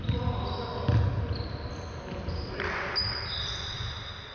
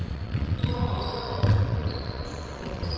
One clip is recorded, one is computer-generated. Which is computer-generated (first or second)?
second